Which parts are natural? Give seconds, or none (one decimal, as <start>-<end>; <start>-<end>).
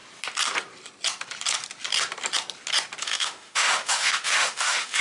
0.0-3.0